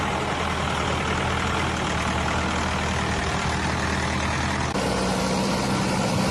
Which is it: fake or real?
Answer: real